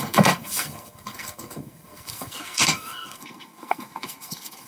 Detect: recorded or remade remade